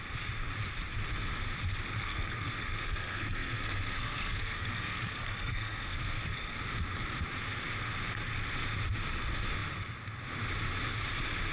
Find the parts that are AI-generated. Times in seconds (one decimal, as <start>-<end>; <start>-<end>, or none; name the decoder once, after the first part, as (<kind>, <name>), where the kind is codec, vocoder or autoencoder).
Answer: 2.0-6.6 (codec, SNAC)